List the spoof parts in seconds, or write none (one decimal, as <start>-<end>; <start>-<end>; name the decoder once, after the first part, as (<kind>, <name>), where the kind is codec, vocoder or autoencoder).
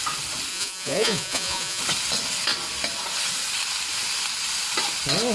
0.5-1.8 (vocoder, Vocos)